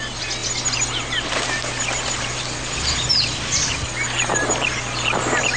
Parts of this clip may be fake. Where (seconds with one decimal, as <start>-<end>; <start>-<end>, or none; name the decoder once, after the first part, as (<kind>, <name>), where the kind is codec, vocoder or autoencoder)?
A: none